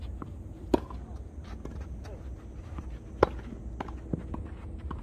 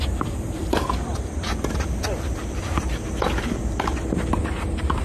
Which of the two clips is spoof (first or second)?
second